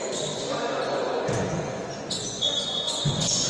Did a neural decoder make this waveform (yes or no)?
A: yes